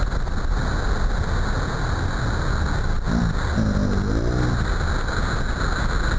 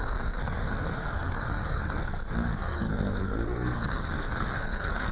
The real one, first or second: first